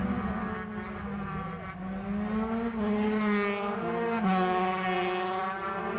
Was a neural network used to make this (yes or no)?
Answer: no